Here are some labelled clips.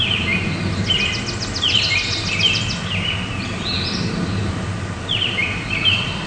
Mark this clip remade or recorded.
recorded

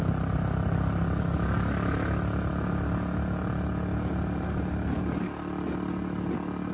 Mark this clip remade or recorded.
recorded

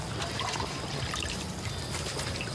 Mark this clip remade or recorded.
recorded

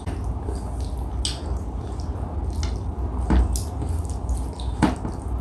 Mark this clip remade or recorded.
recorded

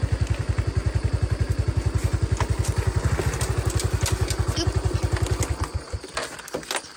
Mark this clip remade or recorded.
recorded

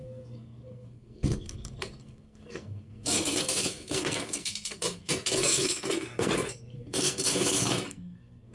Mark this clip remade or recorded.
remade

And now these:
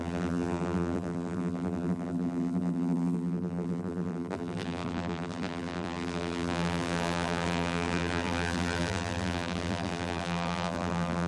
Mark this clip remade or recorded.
remade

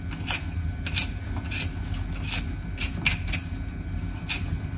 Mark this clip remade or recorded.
recorded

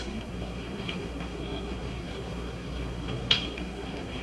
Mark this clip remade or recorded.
remade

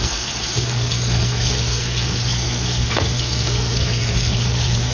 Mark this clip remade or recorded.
remade